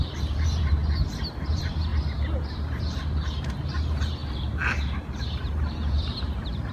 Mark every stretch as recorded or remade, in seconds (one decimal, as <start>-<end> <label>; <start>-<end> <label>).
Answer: 0.0-0.8 remade; 0.8-1.4 recorded; 1.4-1.9 remade; 1.9-2.5 recorded; 2.5-6.7 remade

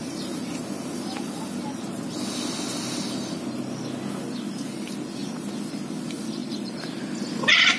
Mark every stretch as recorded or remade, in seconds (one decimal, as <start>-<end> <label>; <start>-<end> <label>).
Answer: 0.0-0.5 remade; 0.5-6.4 recorded; 6.4-7.1 remade; 7.1-7.8 recorded

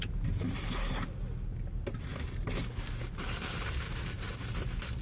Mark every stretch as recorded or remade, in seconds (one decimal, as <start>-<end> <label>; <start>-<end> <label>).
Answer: 0.0-2.1 remade; 2.1-3.9 recorded; 3.9-5.0 remade

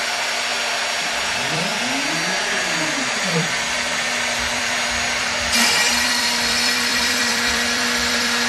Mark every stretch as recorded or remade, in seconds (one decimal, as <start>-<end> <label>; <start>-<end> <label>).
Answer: 0.0-0.5 remade; 0.5-1.1 recorded; 1.1-1.7 remade; 1.7-3.2 recorded; 3.2-8.5 remade

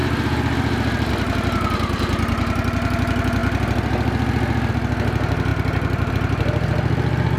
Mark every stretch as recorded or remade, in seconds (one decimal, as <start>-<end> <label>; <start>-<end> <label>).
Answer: 0.0-1.1 remade; 1.1-7.4 recorded

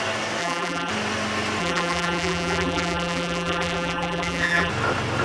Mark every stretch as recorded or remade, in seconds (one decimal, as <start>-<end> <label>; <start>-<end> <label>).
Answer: 0.0-0.4 recorded; 0.4-0.9 remade; 0.9-1.6 recorded; 1.6-4.7 remade; 4.7-5.2 recorded